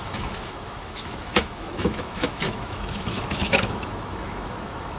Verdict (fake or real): fake